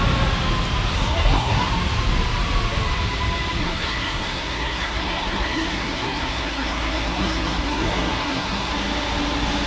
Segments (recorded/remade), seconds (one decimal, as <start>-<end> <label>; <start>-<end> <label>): 0.0-0.9 recorded; 0.9-1.7 remade; 1.7-3.6 recorded; 3.6-8.7 remade; 8.7-9.7 recorded